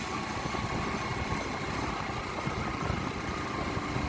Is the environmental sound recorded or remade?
recorded